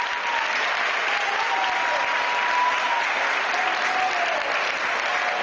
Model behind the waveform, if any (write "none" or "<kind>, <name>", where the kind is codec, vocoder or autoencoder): none